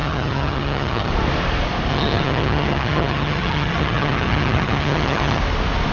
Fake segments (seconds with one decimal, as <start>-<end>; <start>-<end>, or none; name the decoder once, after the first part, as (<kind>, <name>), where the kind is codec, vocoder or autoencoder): 0.0-1.1 (vocoder, HiFi-GAN); 1.9-5.4